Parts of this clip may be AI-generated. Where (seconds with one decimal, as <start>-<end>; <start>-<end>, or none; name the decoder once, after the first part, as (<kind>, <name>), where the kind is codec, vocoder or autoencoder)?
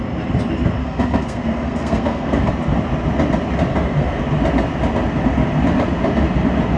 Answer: 0.8-2.5 (codec, SNAC); 3.7-4.2